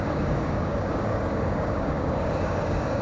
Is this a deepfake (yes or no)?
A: yes